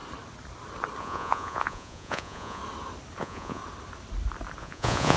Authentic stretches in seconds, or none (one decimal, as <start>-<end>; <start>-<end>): 0.0-1.0; 2.6-3.2; 3.6-4.6